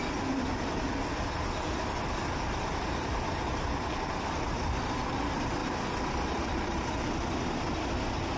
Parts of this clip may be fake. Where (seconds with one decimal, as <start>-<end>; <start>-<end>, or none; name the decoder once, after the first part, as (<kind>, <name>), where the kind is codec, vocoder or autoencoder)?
none